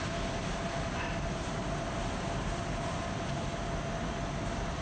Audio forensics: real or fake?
real